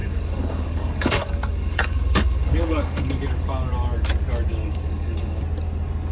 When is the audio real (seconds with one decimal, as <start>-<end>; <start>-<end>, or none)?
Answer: 3.7-4.5; 5.4-6.1